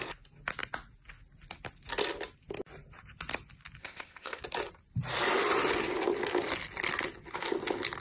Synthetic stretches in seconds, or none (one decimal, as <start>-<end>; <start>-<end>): 3.8-4.4

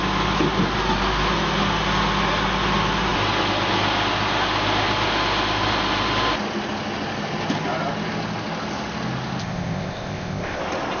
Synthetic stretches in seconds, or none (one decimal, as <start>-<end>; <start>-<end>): 9.4-10.6